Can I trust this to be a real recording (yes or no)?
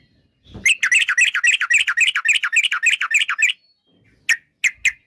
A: yes